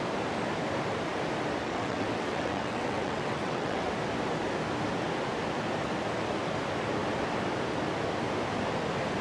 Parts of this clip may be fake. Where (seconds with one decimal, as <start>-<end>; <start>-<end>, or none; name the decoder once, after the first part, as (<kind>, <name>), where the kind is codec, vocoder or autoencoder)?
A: 1.6-3.9 (vocoder, WaveNeXt)